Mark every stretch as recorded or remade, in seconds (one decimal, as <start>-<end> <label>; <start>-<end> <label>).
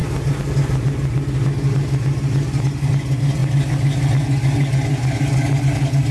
0.0-6.1 recorded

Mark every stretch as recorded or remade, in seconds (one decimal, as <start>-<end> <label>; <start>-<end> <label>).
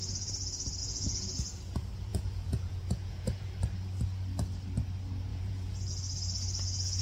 0.0-0.8 recorded; 0.8-1.4 remade; 1.4-2.1 recorded; 2.1-3.5 remade; 3.5-5.3 recorded; 5.3-5.9 remade; 5.9-7.0 recorded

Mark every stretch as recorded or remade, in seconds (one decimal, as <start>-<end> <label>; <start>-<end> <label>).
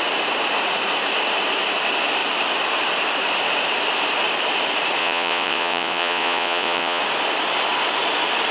0.0-5.0 recorded; 5.0-7.0 remade; 7.0-8.5 recorded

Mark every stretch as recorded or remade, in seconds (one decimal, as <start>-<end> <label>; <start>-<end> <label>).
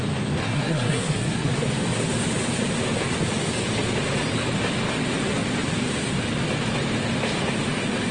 0.0-0.4 recorded; 0.4-1.5 remade; 1.5-8.1 recorded